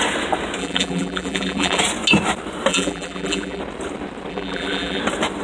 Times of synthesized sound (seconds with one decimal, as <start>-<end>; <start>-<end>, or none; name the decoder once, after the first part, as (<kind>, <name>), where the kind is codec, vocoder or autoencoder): 0.6-1.8 (vocoder, BigVGAN v2); 2.7-3.6; 4.3-5.0